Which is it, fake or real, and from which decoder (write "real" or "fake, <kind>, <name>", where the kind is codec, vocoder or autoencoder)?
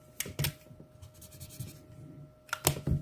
real